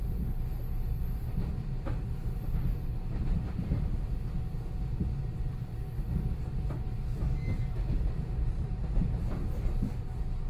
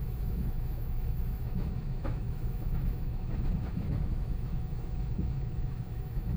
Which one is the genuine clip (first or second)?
first